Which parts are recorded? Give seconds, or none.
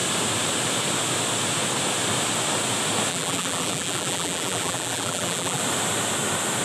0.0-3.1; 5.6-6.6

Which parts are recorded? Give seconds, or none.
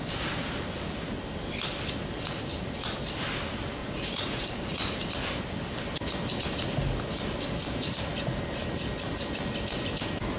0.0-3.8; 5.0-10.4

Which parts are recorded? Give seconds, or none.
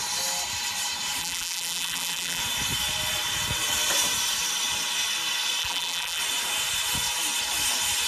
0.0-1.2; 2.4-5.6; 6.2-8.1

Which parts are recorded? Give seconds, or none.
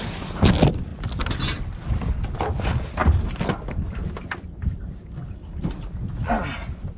0.0-7.0